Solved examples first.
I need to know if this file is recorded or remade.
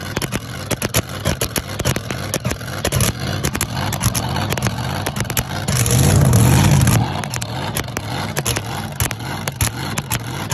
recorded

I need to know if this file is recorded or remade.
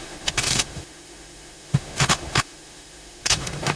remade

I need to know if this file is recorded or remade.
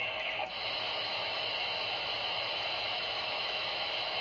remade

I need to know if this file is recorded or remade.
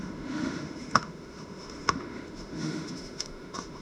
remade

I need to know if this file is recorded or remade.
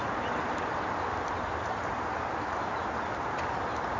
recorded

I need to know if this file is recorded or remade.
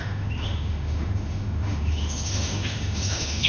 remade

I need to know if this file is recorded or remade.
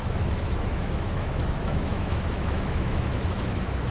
remade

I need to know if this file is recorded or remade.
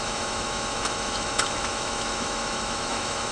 remade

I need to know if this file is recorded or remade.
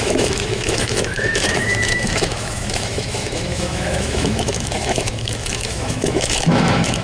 remade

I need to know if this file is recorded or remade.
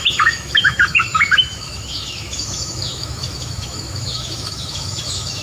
remade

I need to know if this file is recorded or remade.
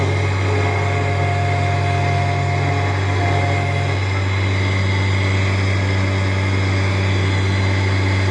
recorded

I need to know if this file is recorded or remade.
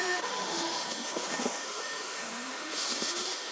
remade